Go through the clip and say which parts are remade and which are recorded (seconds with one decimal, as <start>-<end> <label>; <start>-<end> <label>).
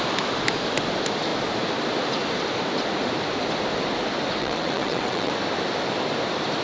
0.0-4.4 recorded; 4.4-5.3 remade; 5.3-6.6 recorded